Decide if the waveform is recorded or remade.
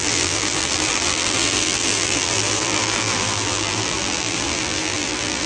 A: remade